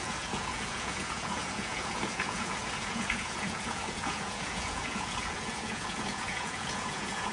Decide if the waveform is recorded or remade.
remade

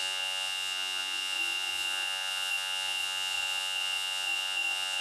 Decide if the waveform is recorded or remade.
remade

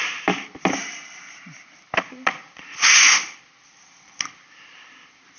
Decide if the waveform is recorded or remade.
recorded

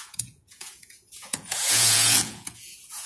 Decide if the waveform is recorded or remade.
remade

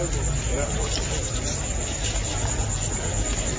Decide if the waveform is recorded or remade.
recorded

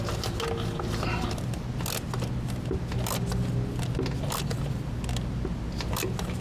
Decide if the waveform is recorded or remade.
recorded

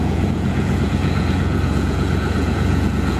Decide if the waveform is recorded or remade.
remade